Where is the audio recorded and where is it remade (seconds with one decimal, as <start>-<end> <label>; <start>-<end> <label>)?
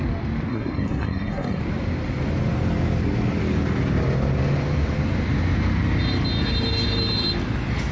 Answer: 0.0-0.5 recorded; 0.5-1.6 remade; 1.6-7.9 recorded